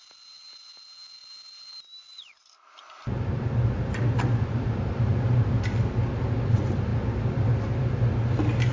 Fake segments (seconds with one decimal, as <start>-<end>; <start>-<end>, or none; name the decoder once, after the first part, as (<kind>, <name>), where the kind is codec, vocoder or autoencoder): none